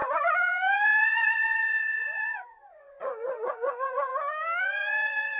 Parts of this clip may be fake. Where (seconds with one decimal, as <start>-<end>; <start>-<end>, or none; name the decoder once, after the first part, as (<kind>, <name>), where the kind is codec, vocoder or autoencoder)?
0.0-4.1 (vocoder, Vocos); 4.6-5.4